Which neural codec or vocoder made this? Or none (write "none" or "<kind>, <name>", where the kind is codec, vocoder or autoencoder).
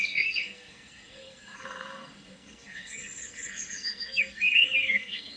codec, SNAC